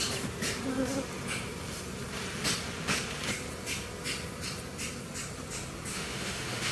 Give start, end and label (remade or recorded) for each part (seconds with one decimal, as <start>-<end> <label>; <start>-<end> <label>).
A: 0.0-5.9 recorded; 5.9-6.7 remade